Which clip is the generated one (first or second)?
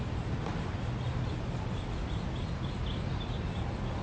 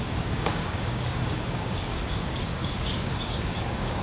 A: second